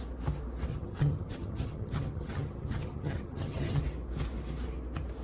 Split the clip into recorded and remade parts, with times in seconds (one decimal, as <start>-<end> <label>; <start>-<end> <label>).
0.0-0.7 recorded; 0.7-3.8 remade; 3.8-5.2 recorded